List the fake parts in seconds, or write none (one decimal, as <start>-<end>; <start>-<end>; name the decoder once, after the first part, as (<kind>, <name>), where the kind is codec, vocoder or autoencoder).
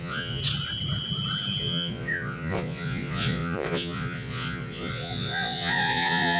0.0-0.4 (vocoder, Vocos); 1.6-6.4